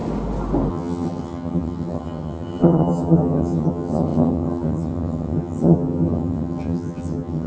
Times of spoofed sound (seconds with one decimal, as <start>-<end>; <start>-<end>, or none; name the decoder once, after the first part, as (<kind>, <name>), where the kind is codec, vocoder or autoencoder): 0.7-7.5 (vocoder, HiFi-GAN)